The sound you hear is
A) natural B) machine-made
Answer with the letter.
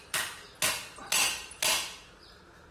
A